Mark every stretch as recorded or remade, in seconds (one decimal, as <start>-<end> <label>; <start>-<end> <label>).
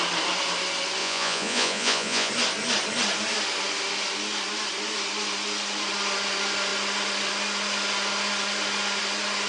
0.0-1.0 recorded; 1.0-2.3 remade; 2.3-9.5 recorded